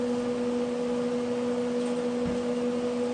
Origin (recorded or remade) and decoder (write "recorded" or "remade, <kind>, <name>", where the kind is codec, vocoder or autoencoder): recorded